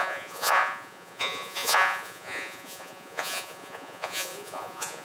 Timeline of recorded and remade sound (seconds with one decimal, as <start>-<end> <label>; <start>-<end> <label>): 0.0-5.0 remade